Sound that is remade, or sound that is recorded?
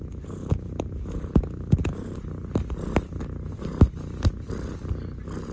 recorded